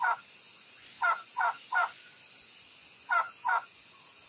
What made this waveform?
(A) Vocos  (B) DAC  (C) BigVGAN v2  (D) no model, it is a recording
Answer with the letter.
A